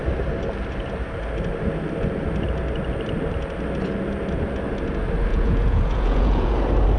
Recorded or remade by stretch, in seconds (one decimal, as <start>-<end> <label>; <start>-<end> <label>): 0.0-5.3 recorded; 5.3-6.5 remade; 6.5-7.0 recorded